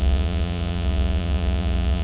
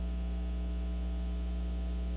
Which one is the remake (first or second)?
first